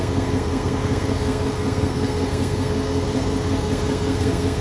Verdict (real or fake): fake